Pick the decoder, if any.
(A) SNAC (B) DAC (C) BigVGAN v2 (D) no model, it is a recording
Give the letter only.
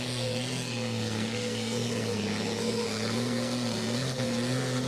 A